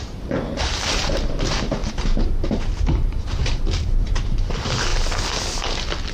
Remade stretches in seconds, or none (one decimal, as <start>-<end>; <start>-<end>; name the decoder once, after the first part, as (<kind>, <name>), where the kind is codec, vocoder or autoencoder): 0.0-4.9 (vocoder, BigVGAN v2)